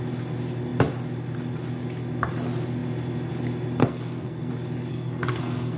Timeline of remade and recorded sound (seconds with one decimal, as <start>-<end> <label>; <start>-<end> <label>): 0.0-3.8 recorded; 3.8-4.5 remade; 4.5-4.9 recorded; 4.9-5.8 remade